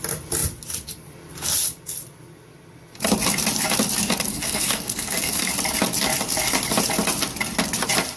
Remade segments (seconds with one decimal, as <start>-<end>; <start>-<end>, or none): 4.3-5.5